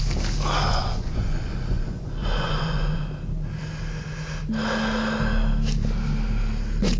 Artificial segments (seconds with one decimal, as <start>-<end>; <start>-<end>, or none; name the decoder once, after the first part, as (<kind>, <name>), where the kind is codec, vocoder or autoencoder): 0.7-3.0 (vocoder, Vocos)